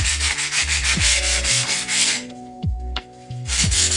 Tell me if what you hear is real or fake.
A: fake